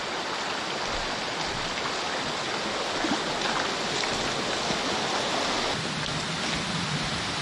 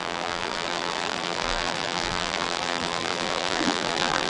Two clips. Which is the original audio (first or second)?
first